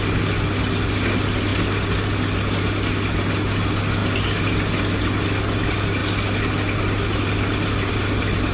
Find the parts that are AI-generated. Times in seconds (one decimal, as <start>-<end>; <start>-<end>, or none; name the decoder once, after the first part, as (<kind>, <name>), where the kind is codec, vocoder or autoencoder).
0.0-1.5 (vocoder, BigVGAN v2); 3.6-4.0; 4.8-6.0; 7.9-8.5